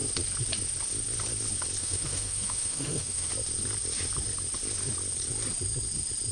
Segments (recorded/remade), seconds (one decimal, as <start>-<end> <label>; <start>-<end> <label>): 0.0-1.8 recorded; 1.8-3.3 remade; 3.3-6.3 recorded